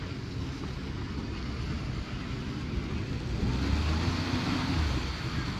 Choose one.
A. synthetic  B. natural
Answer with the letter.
B